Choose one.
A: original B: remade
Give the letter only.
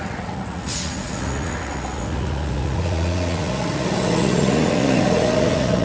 B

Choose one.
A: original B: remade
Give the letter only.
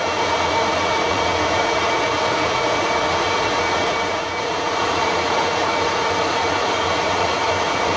B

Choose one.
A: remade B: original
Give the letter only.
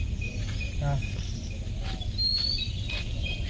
B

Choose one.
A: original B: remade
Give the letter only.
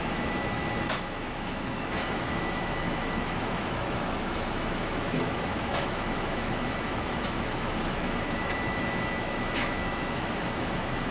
B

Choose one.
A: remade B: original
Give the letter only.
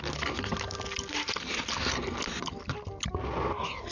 B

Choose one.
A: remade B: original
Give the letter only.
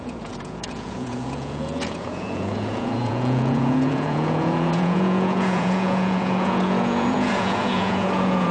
A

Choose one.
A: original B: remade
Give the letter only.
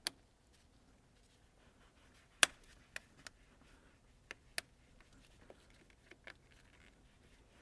A